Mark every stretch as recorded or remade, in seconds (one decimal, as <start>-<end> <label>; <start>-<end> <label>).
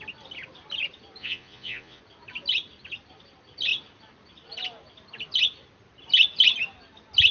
0.0-1.2 recorded; 1.2-2.0 remade; 2.0-7.3 recorded